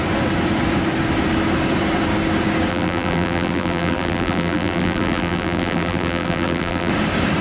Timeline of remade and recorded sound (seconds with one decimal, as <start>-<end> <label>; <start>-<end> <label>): 0.0-2.7 recorded; 2.7-6.9 remade; 6.9-7.4 recorded